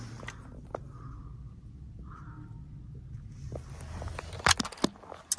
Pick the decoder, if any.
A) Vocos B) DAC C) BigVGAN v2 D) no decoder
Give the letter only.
D